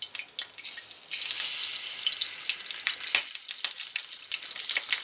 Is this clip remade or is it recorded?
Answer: recorded